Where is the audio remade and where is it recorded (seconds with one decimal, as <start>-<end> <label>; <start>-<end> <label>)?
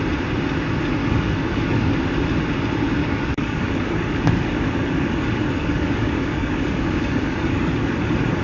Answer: 0.0-1.0 recorded; 1.0-1.9 remade; 1.9-3.0 recorded; 3.0-8.0 remade; 8.0-8.4 recorded